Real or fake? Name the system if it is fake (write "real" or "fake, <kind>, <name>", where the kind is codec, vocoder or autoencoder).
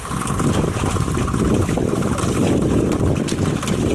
real